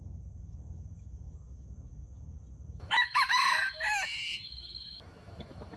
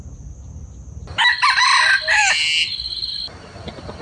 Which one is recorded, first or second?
second